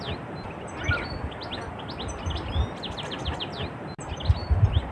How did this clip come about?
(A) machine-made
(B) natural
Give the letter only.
B